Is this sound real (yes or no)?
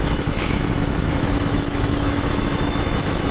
no